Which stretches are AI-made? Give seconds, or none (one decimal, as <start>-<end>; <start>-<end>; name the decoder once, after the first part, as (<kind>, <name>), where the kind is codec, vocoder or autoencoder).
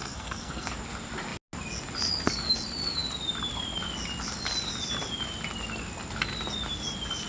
0.0-0.7 (codec, SNAC)